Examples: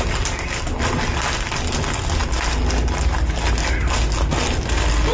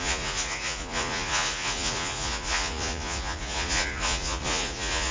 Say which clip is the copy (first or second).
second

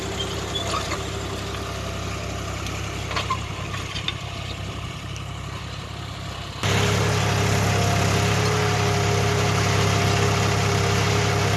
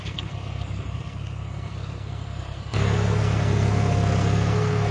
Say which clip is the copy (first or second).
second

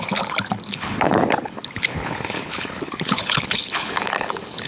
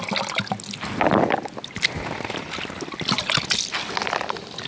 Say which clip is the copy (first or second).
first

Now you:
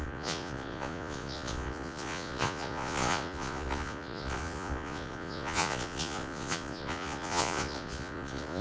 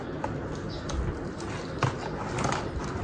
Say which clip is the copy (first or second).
first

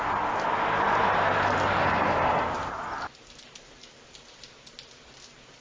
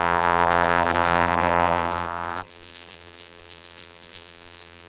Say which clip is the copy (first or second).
second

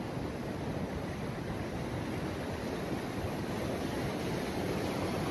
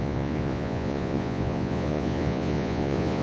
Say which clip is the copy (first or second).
second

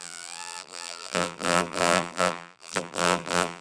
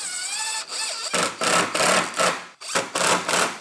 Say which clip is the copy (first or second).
first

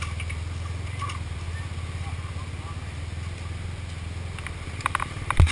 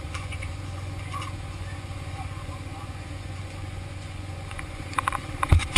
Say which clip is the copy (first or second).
second